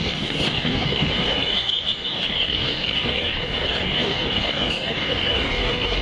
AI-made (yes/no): yes